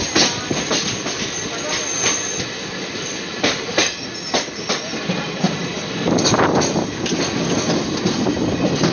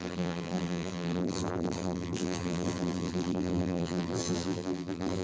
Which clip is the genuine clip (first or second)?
first